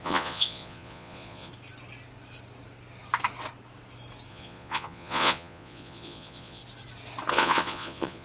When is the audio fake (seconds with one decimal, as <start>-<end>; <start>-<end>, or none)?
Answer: 0.0-1.5; 4.3-6.6; 7.3-8.2